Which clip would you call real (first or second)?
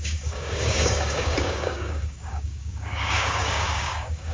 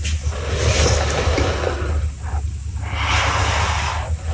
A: second